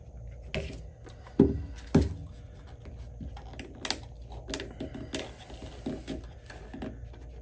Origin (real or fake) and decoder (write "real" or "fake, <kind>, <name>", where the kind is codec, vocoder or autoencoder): real